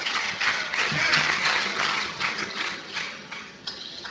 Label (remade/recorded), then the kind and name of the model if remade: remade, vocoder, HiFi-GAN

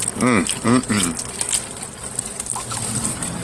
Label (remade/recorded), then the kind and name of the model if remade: recorded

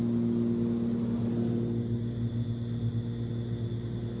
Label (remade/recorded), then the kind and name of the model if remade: recorded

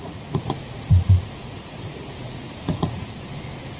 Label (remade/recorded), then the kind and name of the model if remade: remade, vocoder, Vocos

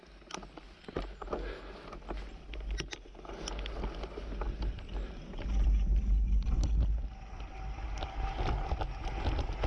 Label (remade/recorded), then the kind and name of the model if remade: recorded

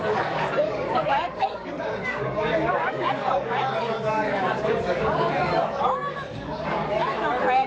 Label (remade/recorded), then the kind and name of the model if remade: remade, codec, DAC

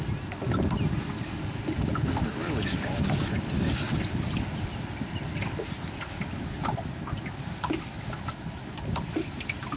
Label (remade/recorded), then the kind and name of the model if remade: recorded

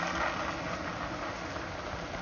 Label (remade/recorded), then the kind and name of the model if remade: recorded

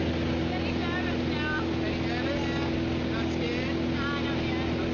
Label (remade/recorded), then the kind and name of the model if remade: recorded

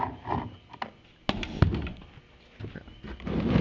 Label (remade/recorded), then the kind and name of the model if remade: recorded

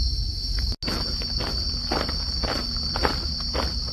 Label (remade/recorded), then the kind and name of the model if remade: recorded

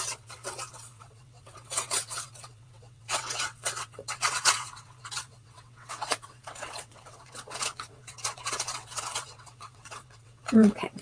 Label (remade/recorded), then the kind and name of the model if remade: remade, vocoder, WaveNeXt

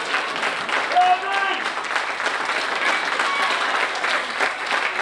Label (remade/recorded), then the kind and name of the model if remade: recorded